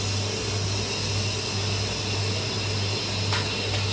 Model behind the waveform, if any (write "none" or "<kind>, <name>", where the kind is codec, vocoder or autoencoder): none